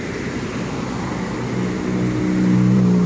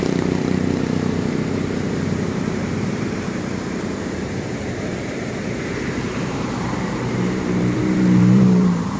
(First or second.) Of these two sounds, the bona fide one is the first